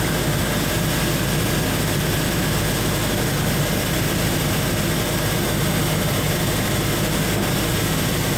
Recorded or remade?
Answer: recorded